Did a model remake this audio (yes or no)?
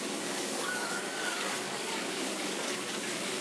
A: yes